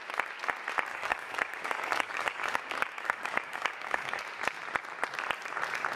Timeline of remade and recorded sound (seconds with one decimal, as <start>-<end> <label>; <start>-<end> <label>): 0.0-0.9 recorded; 0.9-4.2 remade; 4.2-6.0 recorded

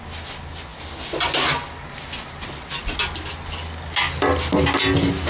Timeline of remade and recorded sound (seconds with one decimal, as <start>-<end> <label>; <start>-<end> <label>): 0.0-5.3 recorded

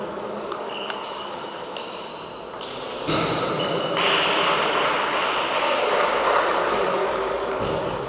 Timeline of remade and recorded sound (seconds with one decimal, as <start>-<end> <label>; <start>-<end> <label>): 0.0-2.1 remade; 2.1-6.5 recorded; 6.5-8.1 remade

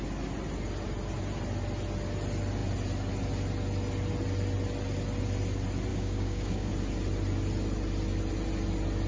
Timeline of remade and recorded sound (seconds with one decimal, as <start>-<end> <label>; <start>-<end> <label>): 0.0-5.9 recorded; 5.9-6.7 remade; 6.7-9.1 recorded